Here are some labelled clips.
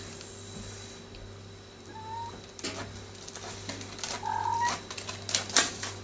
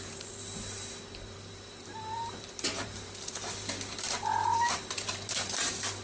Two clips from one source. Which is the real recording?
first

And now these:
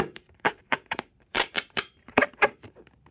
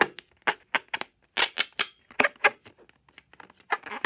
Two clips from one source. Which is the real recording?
second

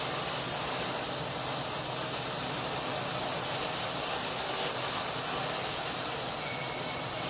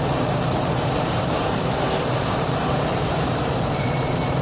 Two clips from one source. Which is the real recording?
first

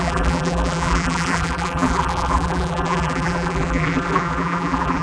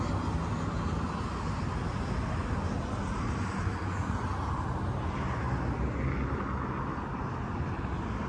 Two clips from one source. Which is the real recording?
second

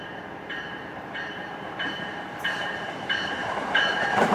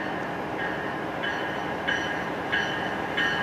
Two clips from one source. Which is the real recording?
second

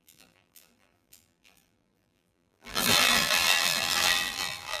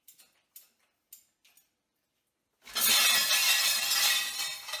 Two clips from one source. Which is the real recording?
second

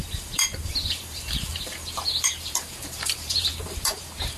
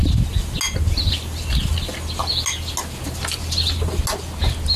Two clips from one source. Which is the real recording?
second